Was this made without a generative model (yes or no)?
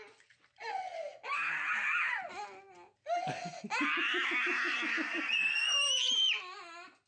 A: yes